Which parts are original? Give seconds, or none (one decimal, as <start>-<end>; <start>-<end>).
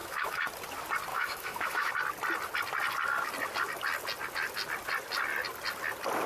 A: 0.5-1.1; 1.9-6.3